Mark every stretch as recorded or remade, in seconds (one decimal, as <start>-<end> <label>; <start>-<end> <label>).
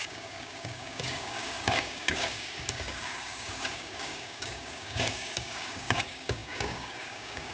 0.0-7.5 remade